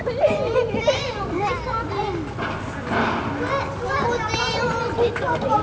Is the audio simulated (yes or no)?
no